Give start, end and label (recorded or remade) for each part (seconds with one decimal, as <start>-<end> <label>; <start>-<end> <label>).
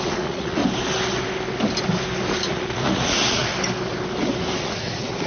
0.0-0.6 remade; 0.6-2.5 recorded; 2.5-3.5 remade; 3.5-4.6 recorded; 4.6-5.3 remade